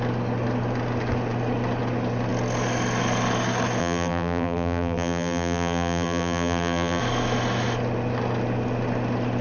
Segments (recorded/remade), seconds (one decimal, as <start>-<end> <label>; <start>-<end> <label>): 0.0-3.8 recorded; 3.8-7.0 remade; 7.0-9.4 recorded